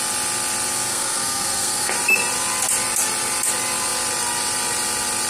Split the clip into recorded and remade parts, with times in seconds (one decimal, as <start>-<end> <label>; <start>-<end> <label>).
0.0-0.9 recorded; 0.9-1.9 remade; 1.9-5.3 recorded